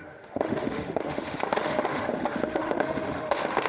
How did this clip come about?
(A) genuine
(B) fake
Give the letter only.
B